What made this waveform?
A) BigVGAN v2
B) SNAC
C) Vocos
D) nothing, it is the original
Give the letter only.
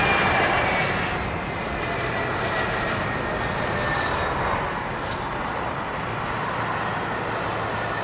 D